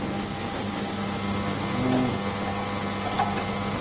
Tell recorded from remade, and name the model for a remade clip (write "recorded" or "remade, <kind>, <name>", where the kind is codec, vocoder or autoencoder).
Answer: recorded